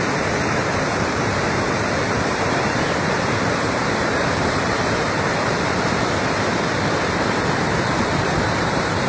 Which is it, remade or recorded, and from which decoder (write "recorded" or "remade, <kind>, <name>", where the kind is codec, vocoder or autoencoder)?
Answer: remade, vocoder, BigVGAN v2